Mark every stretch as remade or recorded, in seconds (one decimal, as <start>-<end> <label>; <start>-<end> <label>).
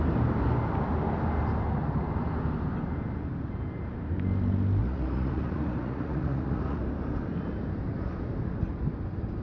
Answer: 0.0-4.8 recorded; 4.8-6.8 remade; 6.8-9.4 recorded